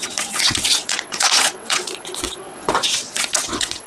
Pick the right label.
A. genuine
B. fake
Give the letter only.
B